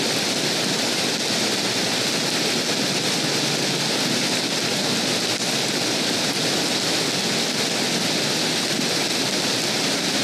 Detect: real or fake real